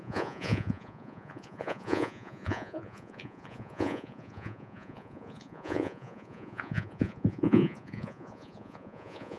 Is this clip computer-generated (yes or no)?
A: yes